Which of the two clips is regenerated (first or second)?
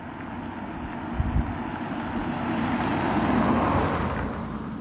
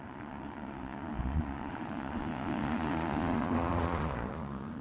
second